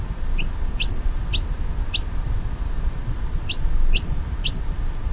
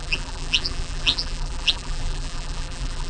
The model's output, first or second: second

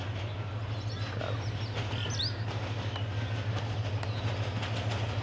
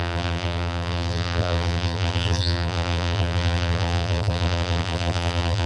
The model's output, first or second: second